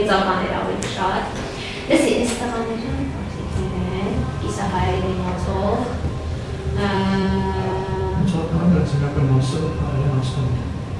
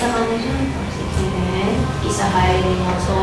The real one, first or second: second